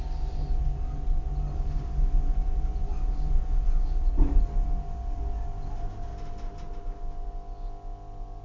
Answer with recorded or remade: recorded